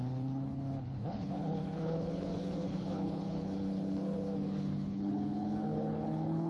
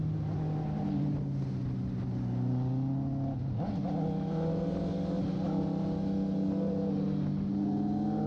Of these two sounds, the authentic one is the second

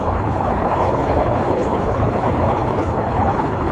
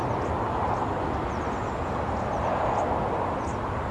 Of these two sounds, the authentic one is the second